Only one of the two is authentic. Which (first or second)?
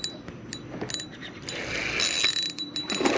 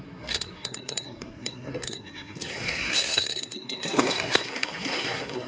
first